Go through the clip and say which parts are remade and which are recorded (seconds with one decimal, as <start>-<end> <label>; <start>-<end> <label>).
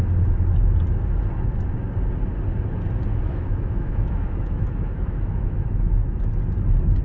0.0-3.1 recorded; 3.1-6.3 remade; 6.3-7.0 recorded